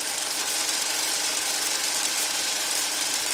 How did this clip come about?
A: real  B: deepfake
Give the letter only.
A